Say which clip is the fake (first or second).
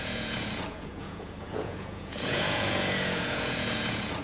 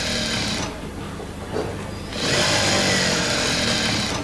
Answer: first